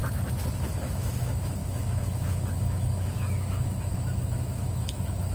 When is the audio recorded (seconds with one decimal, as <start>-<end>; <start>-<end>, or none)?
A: 0.0-0.8